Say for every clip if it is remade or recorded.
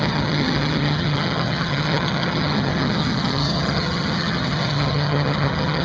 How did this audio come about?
remade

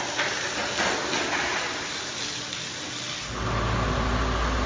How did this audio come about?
recorded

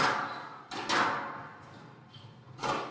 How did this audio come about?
recorded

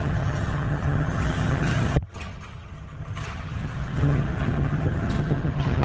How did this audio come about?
remade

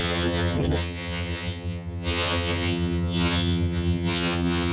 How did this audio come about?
remade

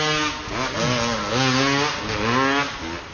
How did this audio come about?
recorded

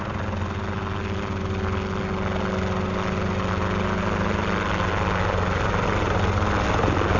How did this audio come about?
recorded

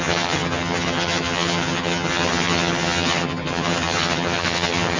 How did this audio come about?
remade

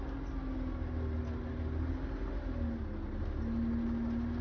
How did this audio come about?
recorded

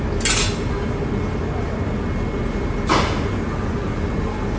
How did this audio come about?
recorded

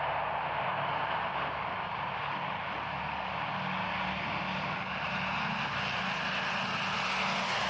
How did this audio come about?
recorded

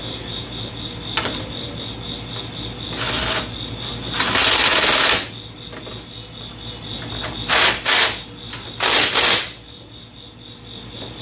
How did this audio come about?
recorded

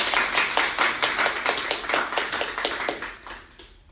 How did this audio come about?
recorded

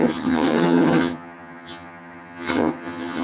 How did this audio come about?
remade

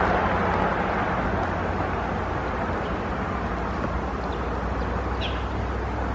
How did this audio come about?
recorded